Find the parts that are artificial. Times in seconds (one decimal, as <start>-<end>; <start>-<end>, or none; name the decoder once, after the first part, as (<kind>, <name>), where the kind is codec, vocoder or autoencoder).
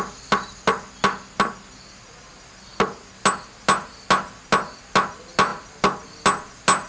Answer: none